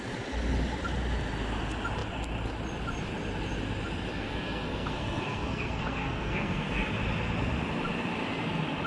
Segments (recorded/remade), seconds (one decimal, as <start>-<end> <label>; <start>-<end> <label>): 0.0-4.1 recorded; 4.1-6.9 remade; 6.9-8.9 recorded